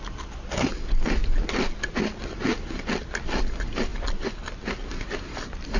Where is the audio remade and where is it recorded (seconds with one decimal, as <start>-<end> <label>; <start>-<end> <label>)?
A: 0.0-5.8 recorded